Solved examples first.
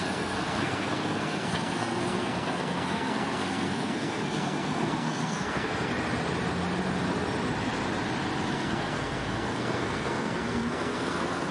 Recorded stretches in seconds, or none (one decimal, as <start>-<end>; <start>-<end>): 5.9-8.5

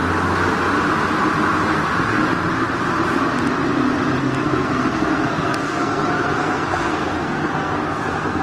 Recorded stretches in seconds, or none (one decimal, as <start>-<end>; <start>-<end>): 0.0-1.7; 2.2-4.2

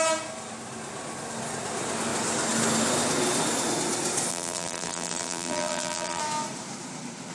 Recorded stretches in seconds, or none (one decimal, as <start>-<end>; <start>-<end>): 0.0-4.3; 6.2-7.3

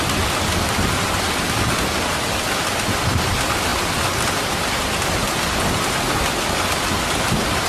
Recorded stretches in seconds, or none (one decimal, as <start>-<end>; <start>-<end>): 0.0-7.7

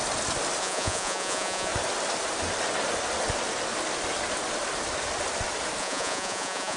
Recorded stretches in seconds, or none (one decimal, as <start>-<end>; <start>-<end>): 0.0-0.6; 1.7-5.8

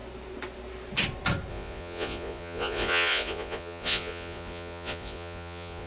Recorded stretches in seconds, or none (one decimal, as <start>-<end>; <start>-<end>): 0.0-1.5

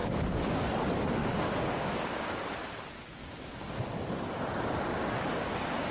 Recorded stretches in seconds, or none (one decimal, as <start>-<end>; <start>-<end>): 0.7-1.2; 2.4-3.2; 3.8-5.9

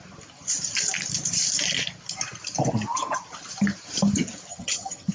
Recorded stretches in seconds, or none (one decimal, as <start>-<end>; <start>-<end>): 0.0-4.5